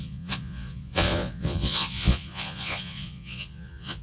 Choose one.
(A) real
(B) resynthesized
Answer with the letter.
B